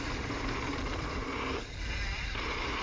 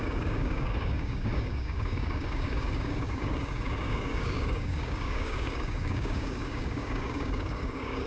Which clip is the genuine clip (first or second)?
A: first